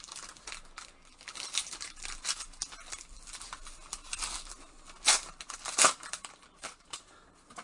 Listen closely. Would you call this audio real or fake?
real